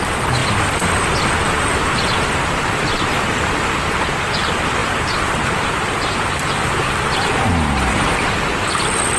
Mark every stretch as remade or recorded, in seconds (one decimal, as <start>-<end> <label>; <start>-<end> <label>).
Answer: 0.0-4.8 recorded; 4.8-9.2 remade